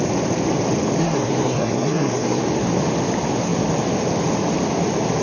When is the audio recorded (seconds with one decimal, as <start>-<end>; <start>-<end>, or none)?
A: 0.0-1.0; 2.4-5.2